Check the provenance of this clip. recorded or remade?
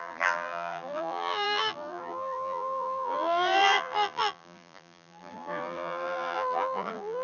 remade